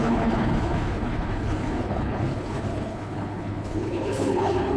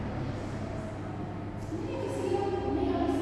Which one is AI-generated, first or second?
first